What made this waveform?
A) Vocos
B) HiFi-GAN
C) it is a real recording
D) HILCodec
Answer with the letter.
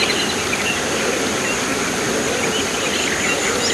C